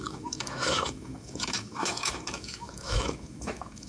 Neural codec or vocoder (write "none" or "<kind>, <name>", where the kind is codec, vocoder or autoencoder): autoencoder, DAC-VAE